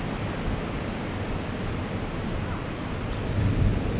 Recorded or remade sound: recorded